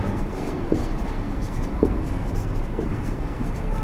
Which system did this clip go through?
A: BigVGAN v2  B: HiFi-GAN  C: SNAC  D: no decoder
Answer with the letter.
C